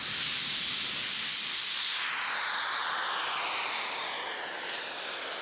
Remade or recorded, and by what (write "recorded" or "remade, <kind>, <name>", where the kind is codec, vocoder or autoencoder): recorded